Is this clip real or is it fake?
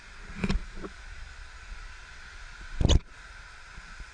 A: real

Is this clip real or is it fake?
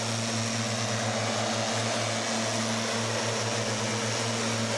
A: real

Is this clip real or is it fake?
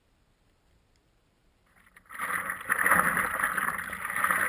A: real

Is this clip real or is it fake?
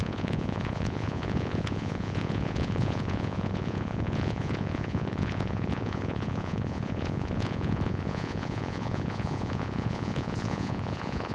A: fake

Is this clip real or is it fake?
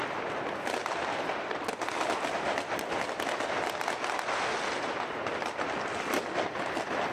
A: real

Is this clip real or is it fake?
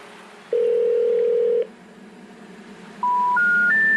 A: real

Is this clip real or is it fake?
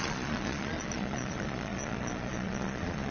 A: fake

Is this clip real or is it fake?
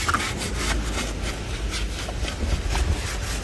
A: real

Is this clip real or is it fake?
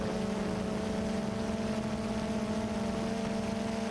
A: real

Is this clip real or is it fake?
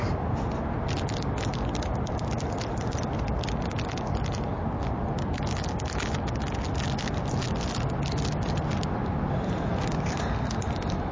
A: real